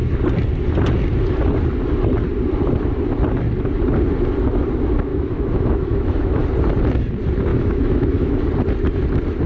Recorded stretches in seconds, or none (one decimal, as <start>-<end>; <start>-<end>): 0.0-5.1; 6.4-7.5; 8.4-9.5